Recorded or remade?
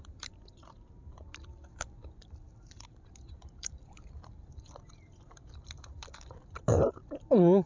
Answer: remade